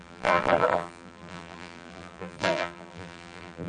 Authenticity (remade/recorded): remade